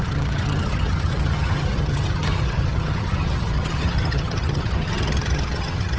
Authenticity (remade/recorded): remade